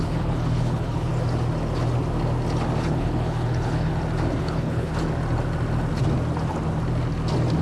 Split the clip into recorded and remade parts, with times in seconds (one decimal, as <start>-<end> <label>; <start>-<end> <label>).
0.0-1.1 remade; 1.1-2.8 recorded; 2.8-3.9 remade; 3.9-4.4 recorded; 4.4-4.9 remade; 4.9-7.6 recorded